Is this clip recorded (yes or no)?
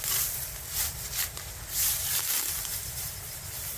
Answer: yes